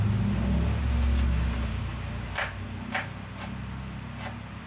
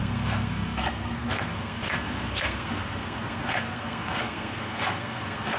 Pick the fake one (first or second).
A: second